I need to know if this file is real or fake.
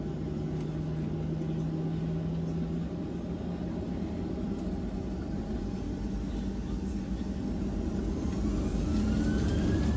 real